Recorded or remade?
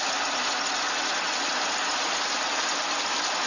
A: recorded